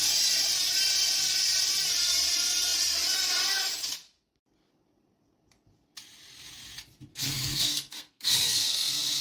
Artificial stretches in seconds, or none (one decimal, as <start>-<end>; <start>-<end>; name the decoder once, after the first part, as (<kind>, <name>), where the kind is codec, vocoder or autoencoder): 7.1-9.2 (codec, SNAC)

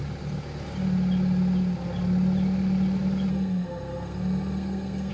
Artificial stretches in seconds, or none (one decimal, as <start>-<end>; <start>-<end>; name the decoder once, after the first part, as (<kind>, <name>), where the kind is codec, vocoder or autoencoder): 3.3-5.1 (codec, SNAC)